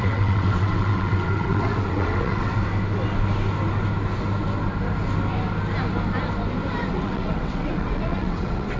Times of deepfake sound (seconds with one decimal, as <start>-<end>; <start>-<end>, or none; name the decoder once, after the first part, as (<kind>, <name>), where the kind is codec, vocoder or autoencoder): 0.0-2.6 (vocoder, WaveNeXt); 6.9-8.8